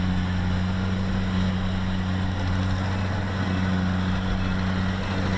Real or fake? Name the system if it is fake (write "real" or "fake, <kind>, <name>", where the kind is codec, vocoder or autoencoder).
real